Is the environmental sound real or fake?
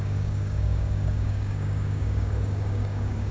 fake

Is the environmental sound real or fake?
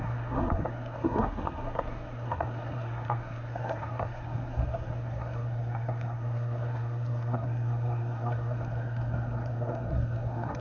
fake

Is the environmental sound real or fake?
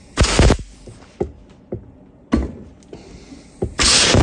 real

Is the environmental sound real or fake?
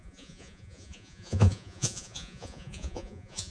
fake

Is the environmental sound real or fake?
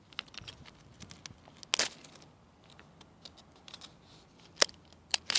real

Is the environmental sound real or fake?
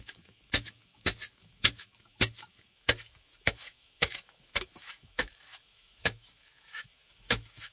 fake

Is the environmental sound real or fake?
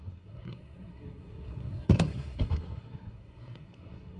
fake